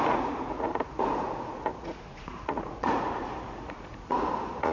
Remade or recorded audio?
remade